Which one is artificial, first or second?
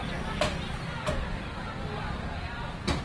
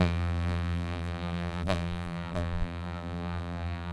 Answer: second